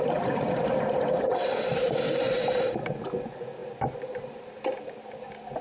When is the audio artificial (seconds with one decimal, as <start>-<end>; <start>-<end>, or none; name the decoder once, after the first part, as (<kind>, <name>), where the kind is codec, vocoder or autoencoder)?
none